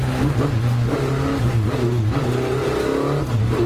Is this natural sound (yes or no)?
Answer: yes